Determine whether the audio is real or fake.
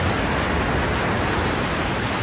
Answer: real